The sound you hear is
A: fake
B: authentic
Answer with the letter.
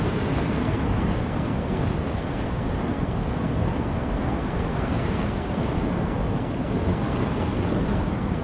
A